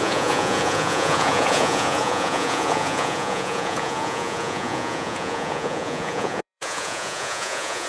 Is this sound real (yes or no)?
no